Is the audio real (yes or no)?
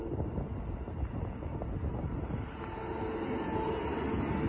yes